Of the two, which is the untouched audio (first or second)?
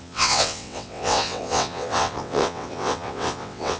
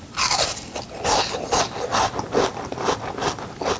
second